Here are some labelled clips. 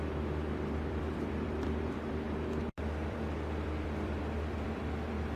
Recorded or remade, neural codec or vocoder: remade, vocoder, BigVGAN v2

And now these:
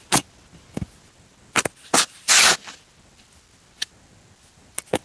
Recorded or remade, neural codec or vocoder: recorded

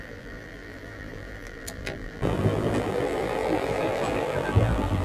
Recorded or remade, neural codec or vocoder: remade, vocoder, BigVGAN v2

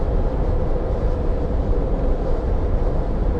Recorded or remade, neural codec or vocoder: recorded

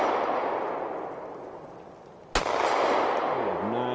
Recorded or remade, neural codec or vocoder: recorded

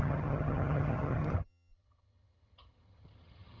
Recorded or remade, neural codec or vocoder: remade, vocoder, HiFi-GAN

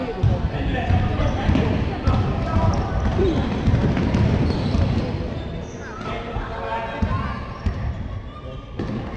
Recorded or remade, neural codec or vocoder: recorded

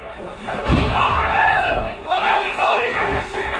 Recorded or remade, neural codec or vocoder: remade, codec, SNAC